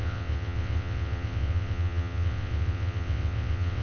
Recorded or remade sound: remade